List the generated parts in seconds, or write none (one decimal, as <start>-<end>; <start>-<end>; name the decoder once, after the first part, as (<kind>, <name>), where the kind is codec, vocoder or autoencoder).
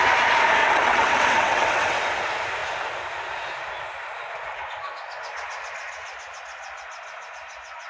0.6-2.0 (vocoder, WaveNeXt)